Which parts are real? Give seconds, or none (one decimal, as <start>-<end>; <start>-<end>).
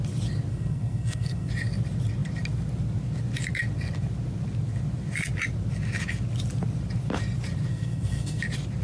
0.0-0.5; 1.5-7.7; 8.4-8.8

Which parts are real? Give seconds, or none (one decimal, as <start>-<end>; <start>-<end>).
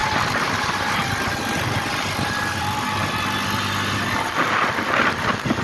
0.0-2.6; 3.0-4.4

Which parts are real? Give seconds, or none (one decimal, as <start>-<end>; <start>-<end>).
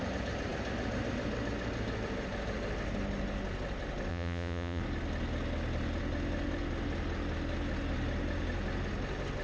0.0-4.1; 4.8-9.4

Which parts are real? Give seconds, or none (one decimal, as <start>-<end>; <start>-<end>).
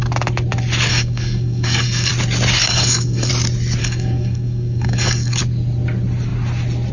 0.0-0.9; 2.1-2.6; 3.3-3.8; 5.4-6.9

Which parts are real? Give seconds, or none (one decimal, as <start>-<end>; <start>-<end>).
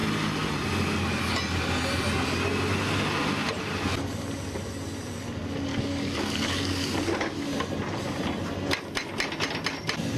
0.0-5.7; 7.5-10.2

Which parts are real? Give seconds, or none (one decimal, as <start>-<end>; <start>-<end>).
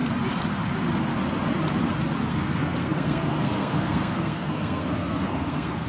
0.0-2.3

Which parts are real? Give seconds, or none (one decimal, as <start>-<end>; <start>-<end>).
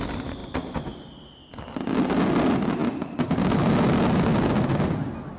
0.0-5.4